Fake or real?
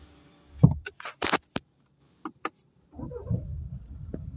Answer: real